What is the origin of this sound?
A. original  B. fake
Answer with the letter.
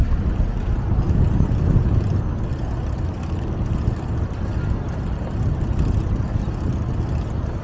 A